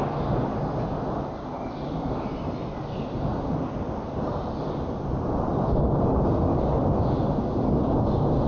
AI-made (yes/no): no